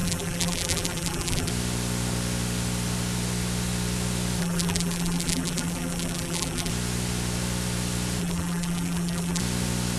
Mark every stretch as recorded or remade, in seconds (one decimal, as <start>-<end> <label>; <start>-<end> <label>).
0.0-1.5 remade; 1.5-4.4 recorded; 4.4-6.7 remade; 6.7-8.2 recorded; 8.2-9.4 remade; 9.4-10.0 recorded